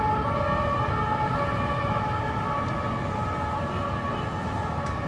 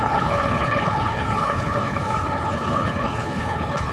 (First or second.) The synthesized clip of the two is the second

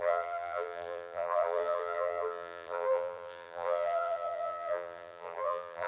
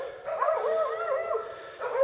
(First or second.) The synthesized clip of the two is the first